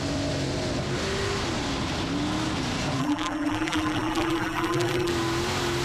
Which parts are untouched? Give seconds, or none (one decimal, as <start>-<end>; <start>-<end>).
0.0-3.0; 5.1-5.8